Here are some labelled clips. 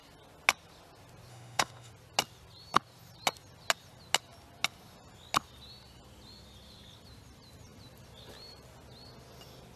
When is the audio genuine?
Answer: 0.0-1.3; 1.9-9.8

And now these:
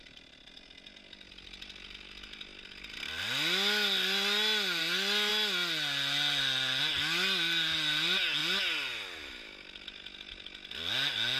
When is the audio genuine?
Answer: 0.0-11.4

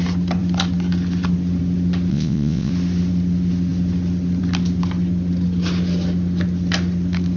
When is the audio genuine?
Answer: 0.0-2.1; 2.7-7.4